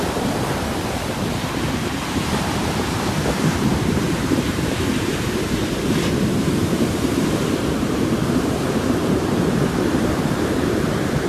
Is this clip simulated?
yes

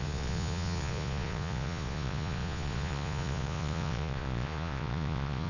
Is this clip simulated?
yes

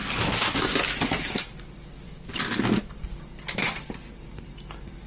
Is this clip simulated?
no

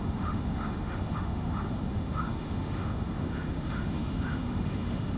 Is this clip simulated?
yes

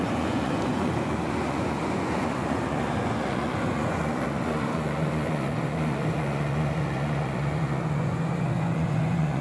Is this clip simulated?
yes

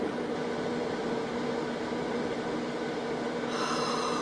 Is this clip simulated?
no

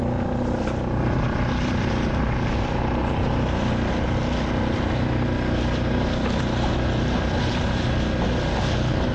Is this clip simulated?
no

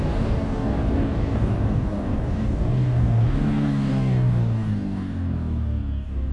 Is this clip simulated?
yes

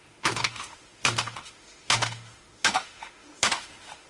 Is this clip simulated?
yes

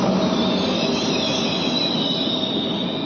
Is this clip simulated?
no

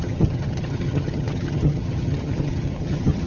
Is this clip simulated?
yes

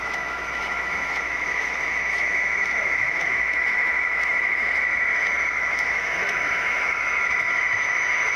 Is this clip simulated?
yes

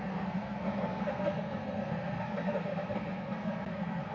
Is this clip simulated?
yes